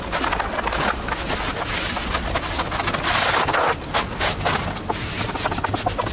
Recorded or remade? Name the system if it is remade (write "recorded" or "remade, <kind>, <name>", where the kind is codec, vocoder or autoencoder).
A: recorded